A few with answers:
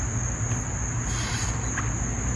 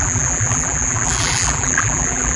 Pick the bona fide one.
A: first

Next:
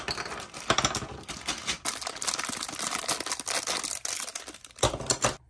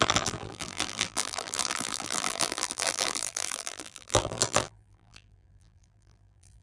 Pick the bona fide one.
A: first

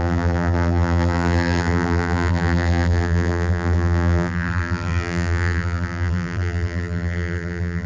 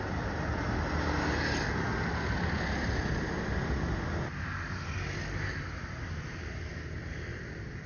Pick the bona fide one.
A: second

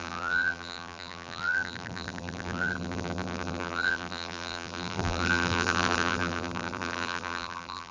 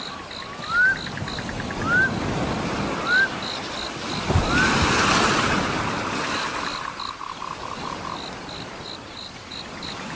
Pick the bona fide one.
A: second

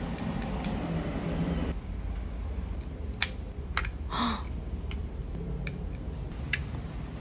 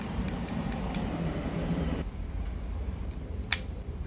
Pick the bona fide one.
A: first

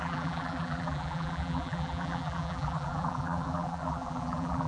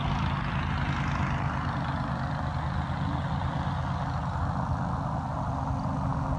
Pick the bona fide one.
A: second